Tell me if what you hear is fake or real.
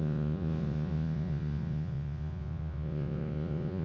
fake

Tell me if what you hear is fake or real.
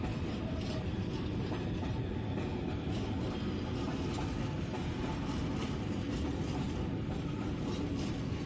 real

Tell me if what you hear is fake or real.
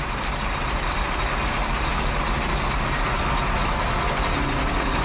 real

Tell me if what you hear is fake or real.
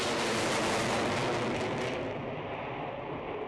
real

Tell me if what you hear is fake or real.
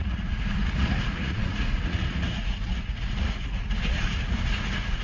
fake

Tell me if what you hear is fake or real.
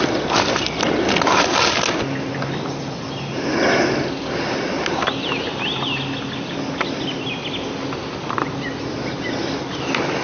real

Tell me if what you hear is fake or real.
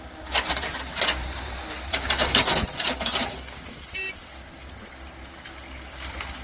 real